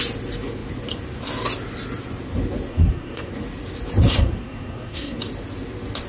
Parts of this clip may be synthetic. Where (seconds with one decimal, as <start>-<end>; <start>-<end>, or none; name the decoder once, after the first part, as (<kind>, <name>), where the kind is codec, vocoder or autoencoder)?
2.7-3.3 (codec, SNAC); 4.2-5.2